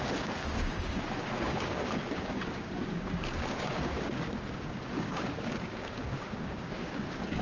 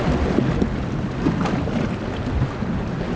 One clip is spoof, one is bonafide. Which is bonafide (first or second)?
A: second